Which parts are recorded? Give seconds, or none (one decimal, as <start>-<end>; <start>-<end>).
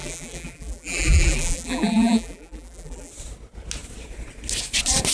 3.1-5.1